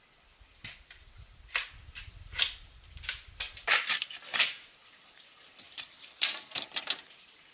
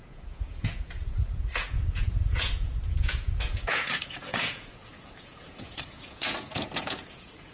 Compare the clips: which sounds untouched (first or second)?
first